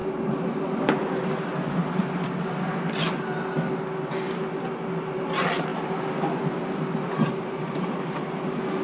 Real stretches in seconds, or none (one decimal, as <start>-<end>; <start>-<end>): 0.0-8.8